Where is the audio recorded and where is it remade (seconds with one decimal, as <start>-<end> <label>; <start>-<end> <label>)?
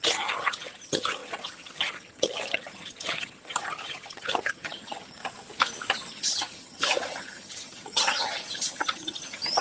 0.0-5.2 remade; 5.2-6.1 recorded; 6.1-9.6 remade